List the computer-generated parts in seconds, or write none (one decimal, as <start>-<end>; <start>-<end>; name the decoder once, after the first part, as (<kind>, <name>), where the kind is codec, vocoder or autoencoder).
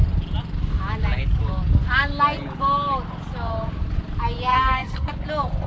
4.5-5.1 (codec, SNAC)